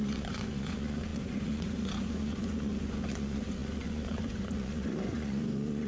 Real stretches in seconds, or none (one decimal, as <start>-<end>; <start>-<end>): none